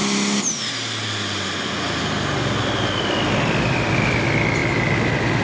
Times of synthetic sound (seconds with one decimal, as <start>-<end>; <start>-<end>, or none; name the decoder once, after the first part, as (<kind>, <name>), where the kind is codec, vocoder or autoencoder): none